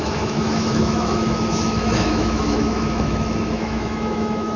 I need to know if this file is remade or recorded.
remade